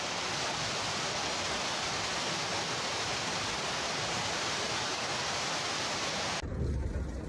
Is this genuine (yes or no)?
yes